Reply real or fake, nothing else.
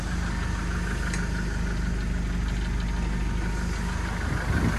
real